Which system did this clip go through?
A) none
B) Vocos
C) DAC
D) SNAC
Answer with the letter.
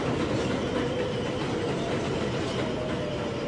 A